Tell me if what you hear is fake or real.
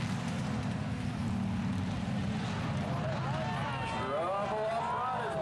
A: real